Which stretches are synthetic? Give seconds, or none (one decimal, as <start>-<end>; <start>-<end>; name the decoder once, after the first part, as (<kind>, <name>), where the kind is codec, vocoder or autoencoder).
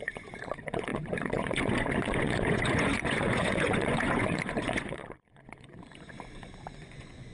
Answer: 0.0-7.3 (vocoder, Vocos)